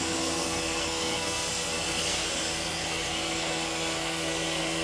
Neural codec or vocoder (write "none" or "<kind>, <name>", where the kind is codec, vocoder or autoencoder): codec, SNAC